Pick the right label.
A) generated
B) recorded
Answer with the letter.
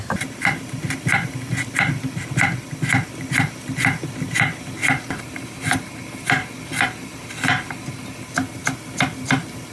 B